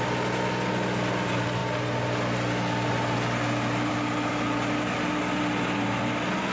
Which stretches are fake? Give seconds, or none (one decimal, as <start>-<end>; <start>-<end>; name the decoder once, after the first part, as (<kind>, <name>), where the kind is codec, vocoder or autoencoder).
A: none